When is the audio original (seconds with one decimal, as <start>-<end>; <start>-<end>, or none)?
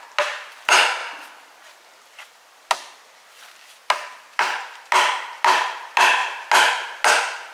0.0-7.5